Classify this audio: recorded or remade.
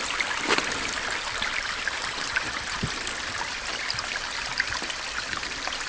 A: remade